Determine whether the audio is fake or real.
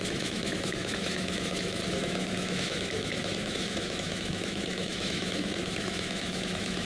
fake